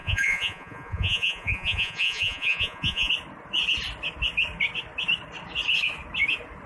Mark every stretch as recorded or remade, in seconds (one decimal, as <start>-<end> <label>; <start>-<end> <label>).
0.0-3.1 remade; 3.1-6.7 recorded